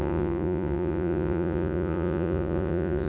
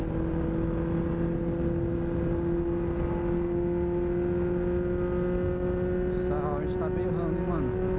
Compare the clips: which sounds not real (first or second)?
first